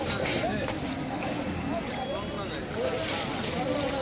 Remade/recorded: recorded